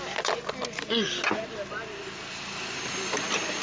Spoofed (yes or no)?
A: no